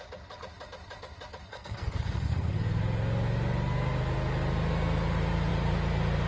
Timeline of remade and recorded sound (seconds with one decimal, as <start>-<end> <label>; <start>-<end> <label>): 0.0-1.5 recorded; 1.5-2.8 remade; 2.8-6.3 recorded